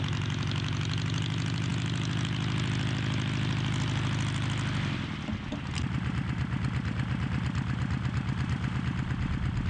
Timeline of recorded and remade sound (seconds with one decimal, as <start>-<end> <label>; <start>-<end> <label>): 0.0-9.7 recorded